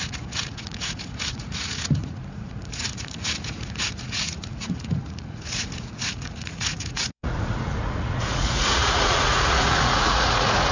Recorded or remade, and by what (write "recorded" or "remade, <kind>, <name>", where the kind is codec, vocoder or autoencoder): remade, vocoder, Vocos